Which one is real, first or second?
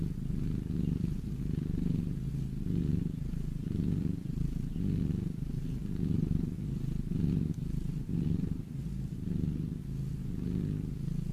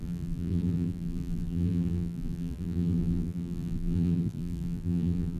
first